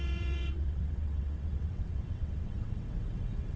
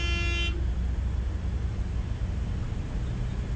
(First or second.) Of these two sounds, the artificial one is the first